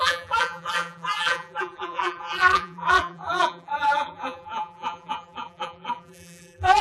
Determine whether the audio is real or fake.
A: fake